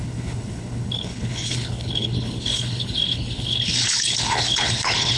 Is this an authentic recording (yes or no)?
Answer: no